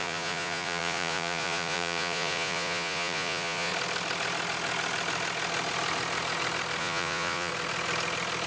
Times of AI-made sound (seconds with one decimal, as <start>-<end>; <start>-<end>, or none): 0.0-3.7; 6.8-7.5